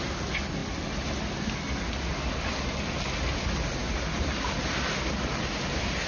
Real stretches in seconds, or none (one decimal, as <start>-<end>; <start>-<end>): 0.0-6.1